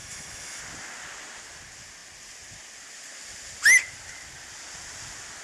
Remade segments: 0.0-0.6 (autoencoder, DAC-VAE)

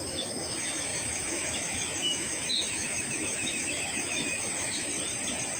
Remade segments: 0.0-4.9 (autoencoder, DAC-VAE)